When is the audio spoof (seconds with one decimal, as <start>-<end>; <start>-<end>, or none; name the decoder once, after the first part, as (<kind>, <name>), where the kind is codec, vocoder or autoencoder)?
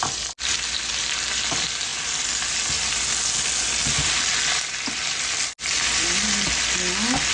none